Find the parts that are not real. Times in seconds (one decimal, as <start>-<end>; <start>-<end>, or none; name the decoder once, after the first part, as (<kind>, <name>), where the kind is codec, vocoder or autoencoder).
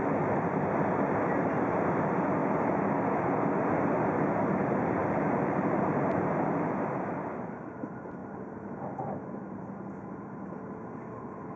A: 5.0-6.1 (vocoder, BigVGAN v2)